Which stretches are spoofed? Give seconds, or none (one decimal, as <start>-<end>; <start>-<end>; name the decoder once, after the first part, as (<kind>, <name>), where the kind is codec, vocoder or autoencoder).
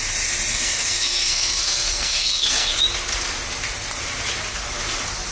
0.5-2.8 (codec, SNAC)